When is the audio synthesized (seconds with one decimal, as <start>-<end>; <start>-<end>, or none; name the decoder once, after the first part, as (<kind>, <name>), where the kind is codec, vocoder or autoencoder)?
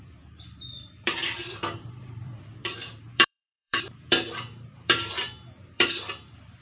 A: 0.0-6.6 (vocoder, BigVGAN v2)